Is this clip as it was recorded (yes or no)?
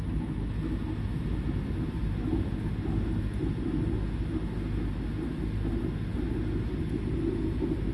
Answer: yes